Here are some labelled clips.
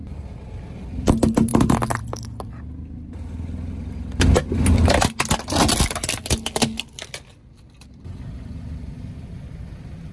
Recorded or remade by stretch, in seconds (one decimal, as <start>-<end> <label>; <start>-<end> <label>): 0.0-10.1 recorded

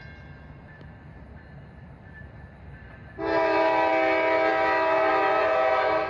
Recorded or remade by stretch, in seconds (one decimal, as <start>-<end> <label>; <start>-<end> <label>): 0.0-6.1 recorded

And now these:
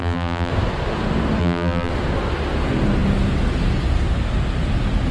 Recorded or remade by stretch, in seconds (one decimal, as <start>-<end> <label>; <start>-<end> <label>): 0.0-0.5 remade; 0.5-1.4 recorded; 1.4-1.9 remade; 1.9-5.1 recorded

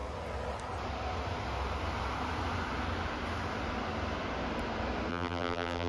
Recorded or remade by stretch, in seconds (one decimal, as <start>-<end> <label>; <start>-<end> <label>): 0.0-5.1 recorded; 5.1-5.9 remade